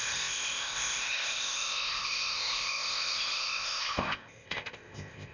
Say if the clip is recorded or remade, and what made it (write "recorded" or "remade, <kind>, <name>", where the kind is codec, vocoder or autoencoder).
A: remade, codec, ZipCodec